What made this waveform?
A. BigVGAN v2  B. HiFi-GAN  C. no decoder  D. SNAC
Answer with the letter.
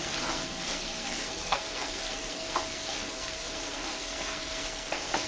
D